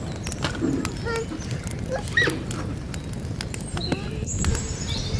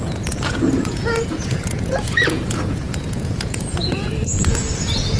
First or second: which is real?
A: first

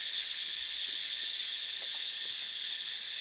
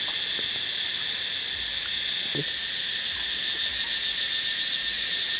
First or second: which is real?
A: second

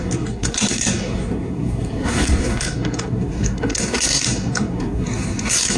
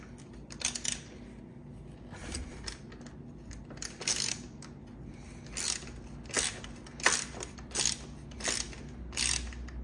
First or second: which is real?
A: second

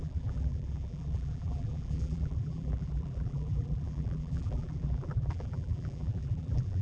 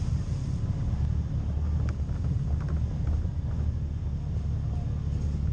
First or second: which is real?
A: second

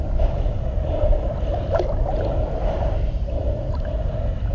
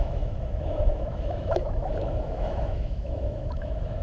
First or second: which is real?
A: first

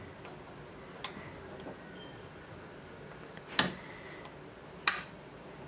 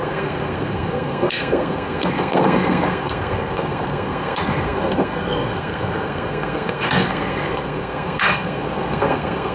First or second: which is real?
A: first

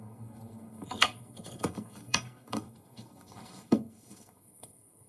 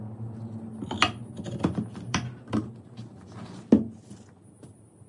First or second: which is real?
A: second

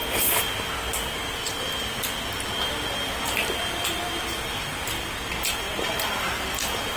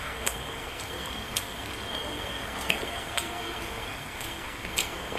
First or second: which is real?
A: first